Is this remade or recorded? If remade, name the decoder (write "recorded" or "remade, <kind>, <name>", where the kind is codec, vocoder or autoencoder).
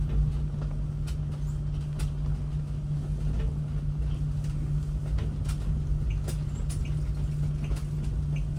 recorded